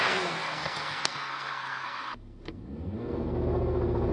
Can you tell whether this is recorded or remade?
remade